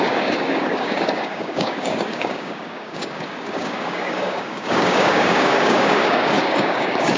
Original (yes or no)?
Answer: no